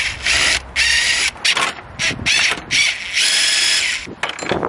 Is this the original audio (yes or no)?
yes